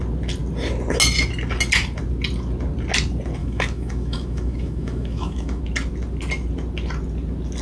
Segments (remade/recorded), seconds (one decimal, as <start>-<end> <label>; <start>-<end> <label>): 0.0-3.4 recorded; 3.4-5.6 remade; 5.6-7.6 recorded